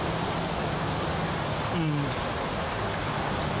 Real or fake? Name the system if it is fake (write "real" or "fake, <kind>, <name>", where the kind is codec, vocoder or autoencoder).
real